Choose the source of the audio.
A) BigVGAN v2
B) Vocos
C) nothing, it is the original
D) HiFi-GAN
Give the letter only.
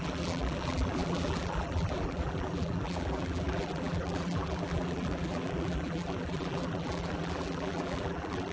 A